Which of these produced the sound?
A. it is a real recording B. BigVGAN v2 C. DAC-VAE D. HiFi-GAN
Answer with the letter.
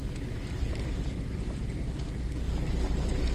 A